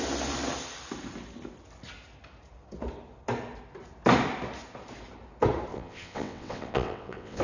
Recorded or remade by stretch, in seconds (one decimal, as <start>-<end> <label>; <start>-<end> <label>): 0.0-5.7 recorded; 5.7-7.4 remade